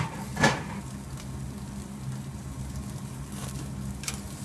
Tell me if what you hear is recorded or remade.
recorded